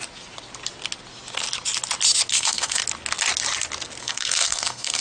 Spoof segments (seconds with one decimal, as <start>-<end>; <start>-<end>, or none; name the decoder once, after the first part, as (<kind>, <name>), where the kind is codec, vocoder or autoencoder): 2.3-2.8 (codec, SNAC); 4.0-5.0